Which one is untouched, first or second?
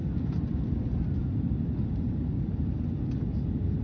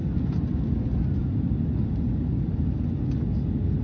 second